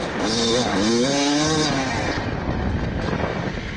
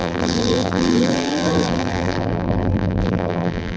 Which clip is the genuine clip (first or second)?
first